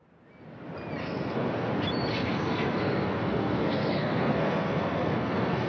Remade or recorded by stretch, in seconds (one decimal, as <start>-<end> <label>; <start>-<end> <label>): 0.0-1.0 recorded; 1.0-1.7 remade; 1.7-2.1 recorded; 2.1-5.7 remade